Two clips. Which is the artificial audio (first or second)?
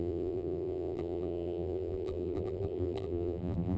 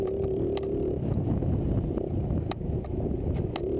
first